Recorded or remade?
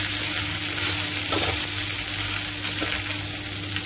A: recorded